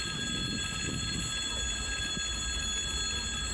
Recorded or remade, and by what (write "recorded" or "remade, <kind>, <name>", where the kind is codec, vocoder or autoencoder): recorded